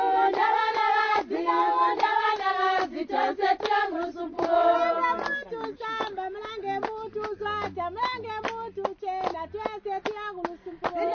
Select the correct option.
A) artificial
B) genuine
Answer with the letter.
B